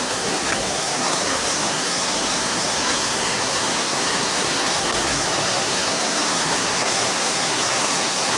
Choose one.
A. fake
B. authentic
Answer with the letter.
A